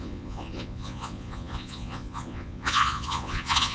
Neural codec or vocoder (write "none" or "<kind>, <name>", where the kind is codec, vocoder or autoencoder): vocoder, Vocos